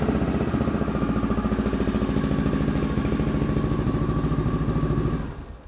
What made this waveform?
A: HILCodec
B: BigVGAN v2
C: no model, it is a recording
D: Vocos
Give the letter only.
C